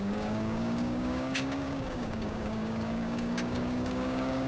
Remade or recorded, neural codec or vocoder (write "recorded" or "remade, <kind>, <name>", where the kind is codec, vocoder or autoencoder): remade, codec, DAC